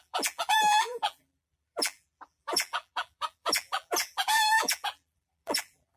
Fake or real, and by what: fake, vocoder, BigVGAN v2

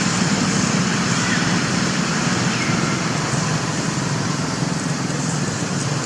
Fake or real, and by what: fake, vocoder, BigVGAN v2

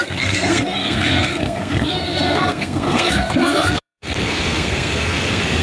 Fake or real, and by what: fake, codec, SNAC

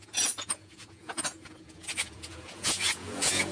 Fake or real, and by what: fake, vocoder, Vocos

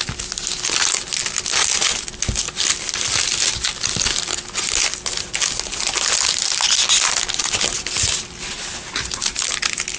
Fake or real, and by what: real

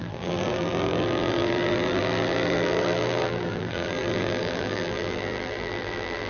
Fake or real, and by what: fake, vocoder, BigVGAN v2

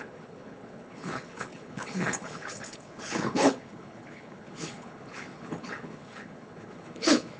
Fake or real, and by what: fake, codec, HILCodec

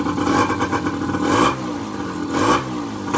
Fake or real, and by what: real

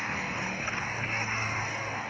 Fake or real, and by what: fake, codec, DAC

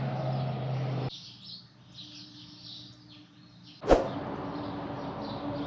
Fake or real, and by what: real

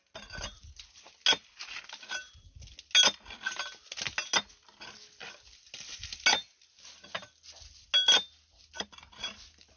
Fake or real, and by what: real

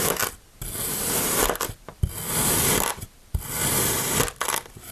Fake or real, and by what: real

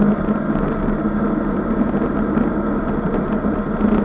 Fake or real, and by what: real